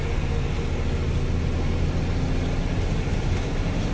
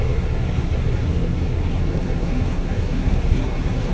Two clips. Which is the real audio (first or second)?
first